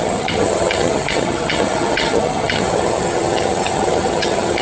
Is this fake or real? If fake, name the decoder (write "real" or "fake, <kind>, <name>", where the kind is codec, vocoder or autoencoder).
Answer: fake, vocoder, HiFi-GAN